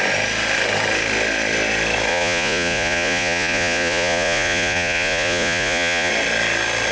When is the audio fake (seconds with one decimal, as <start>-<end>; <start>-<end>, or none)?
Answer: 2.1-6.1